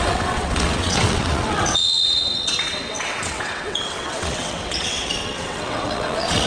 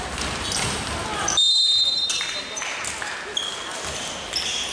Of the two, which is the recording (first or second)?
second